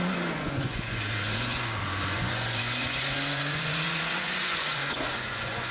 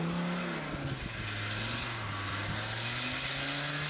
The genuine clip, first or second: second